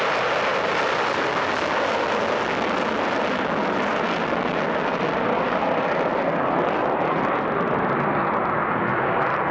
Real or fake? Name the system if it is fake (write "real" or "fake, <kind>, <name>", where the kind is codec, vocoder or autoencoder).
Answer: real